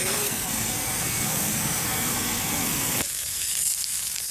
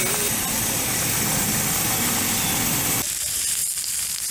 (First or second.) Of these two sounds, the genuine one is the second